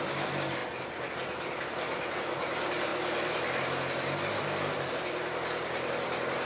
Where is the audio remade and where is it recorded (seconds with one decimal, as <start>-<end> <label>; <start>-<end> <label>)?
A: 0.0-6.4 recorded